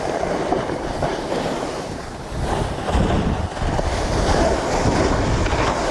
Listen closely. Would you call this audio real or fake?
real